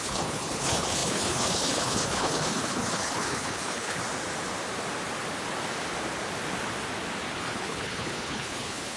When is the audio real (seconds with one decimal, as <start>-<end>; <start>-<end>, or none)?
4.0-7.4